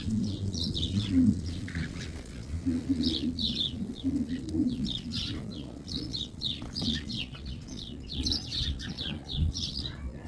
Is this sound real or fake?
fake